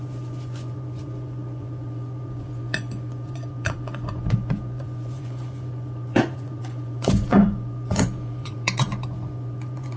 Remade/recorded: remade